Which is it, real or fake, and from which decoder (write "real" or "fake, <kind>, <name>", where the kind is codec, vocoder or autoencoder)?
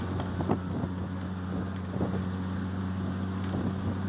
real